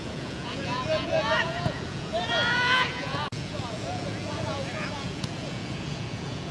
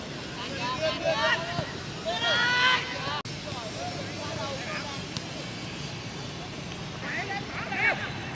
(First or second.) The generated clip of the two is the first